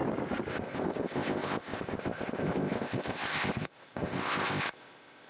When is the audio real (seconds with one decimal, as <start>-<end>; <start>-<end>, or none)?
0.0-0.5